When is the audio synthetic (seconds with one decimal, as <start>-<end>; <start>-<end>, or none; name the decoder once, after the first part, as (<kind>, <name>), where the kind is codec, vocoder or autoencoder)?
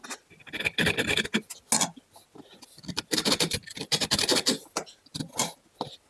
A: none